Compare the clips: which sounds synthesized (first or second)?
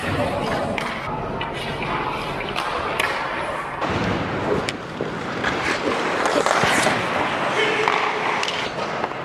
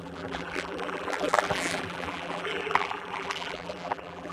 second